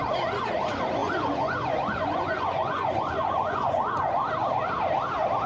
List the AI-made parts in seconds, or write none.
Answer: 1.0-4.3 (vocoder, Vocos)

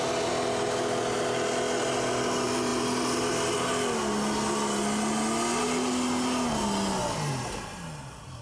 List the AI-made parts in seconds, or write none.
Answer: none

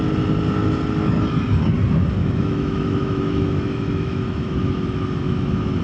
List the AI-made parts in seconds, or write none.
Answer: 2.2-5.8 (autoencoder, DAC-VAE)